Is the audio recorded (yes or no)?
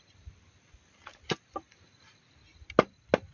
yes